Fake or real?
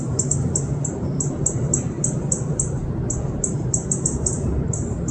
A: real